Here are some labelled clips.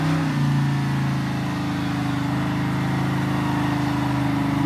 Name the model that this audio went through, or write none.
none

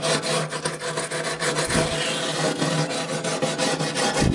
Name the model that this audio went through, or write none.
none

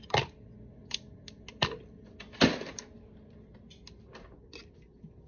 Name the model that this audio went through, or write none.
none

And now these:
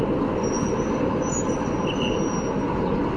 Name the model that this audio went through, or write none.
none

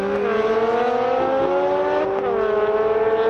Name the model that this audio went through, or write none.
none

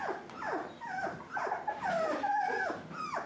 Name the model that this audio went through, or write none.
none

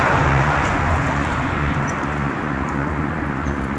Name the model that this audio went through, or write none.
vocoder, Vocos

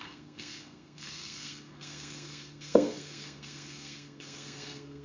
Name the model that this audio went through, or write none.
codec, SNAC